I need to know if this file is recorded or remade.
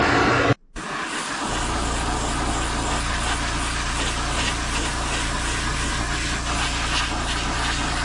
recorded